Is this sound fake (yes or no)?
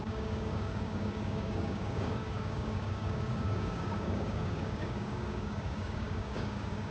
yes